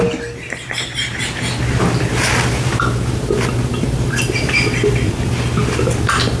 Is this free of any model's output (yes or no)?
yes